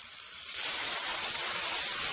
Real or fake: real